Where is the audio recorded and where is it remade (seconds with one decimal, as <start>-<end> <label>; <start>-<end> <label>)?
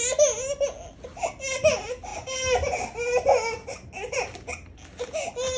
0.0-5.6 recorded